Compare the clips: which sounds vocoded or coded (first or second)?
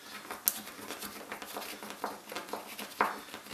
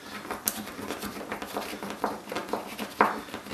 second